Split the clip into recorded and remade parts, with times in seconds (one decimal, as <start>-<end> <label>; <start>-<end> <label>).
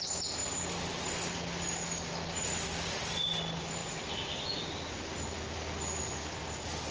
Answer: 0.0-6.9 recorded